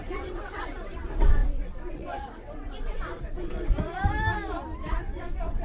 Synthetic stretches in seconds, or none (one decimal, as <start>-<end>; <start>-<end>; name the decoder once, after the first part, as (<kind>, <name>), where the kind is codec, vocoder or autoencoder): 0.0-3.9 (vocoder, WaveNeXt); 4.8-5.6